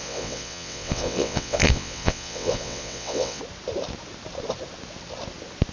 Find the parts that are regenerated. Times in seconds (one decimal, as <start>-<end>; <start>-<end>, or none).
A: 0.0-3.4